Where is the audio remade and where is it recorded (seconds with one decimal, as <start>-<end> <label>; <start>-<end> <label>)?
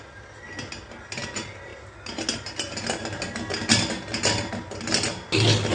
0.0-5.7 recorded